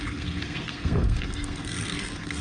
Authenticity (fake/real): fake